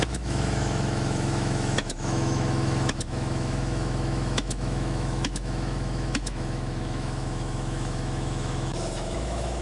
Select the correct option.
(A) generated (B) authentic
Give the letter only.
A